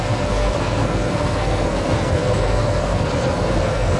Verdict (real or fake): fake